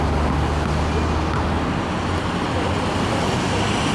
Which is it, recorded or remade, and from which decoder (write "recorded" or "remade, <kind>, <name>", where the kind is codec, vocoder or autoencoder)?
recorded